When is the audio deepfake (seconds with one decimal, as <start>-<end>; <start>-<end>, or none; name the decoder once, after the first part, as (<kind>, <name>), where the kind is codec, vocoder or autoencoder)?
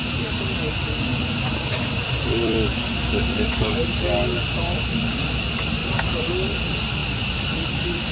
1.1-3.6 (vocoder, BigVGAN v2); 5.8-6.5